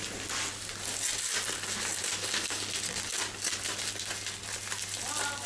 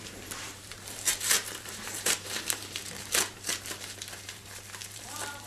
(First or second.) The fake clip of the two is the second